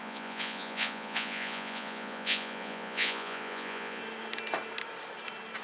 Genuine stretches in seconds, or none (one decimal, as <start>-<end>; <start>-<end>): 4.0-5.6